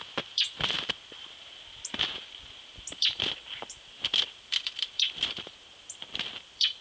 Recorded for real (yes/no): no